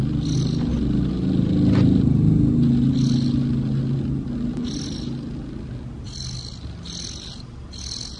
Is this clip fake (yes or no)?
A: no